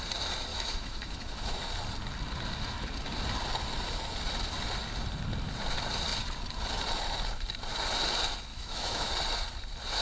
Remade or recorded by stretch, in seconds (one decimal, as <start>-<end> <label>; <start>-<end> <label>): 0.0-0.5 recorded; 0.5-1.7 remade; 1.7-8.5 recorded; 8.5-9.1 remade; 9.1-10.0 recorded